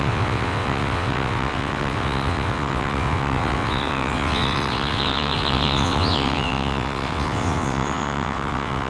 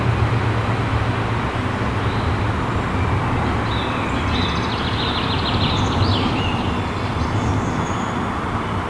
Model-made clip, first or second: first